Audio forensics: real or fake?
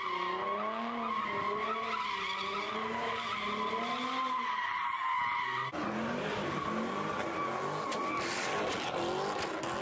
real